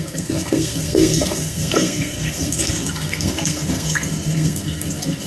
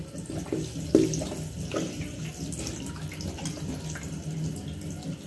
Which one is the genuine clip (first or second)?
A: second